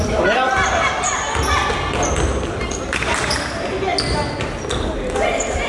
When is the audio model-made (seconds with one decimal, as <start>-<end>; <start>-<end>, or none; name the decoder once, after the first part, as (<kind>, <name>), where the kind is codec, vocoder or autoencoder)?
none